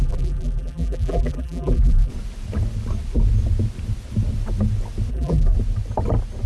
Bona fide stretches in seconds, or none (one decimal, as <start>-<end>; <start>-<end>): 2.1-5.1; 5.5-6.5